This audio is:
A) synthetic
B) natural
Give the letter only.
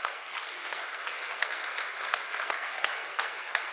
A